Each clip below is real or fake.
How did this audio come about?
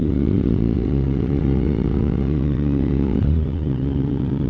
fake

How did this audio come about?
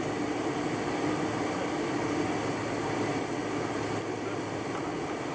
real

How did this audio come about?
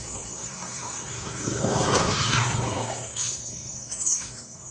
fake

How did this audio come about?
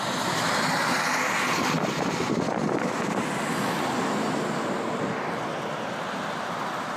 real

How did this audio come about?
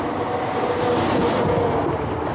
real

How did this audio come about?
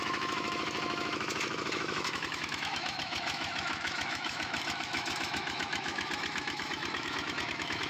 fake